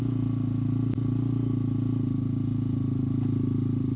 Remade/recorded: recorded